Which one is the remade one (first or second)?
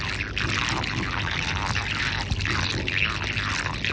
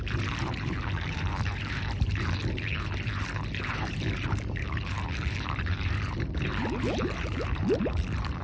second